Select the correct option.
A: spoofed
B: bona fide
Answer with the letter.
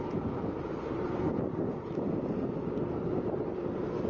B